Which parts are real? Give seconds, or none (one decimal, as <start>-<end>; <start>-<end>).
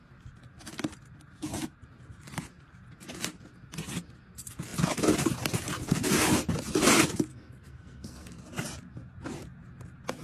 0.0-7.3; 8.4-10.2